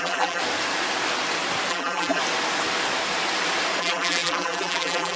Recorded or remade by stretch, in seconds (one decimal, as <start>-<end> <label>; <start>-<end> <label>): 0.0-0.4 remade; 0.4-1.7 recorded; 1.7-2.2 remade; 2.2-3.8 recorded; 3.8-5.2 remade